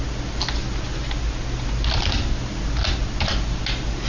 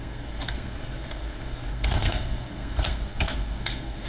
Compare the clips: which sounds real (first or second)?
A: first